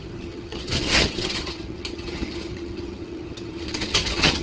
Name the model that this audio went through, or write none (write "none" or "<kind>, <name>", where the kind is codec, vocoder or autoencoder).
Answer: vocoder, HiFi-GAN